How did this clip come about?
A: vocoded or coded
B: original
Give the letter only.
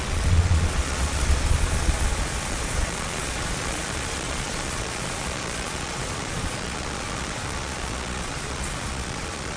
A